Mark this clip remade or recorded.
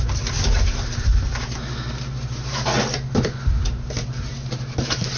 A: recorded